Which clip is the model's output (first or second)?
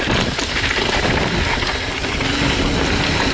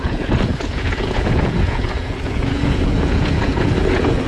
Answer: second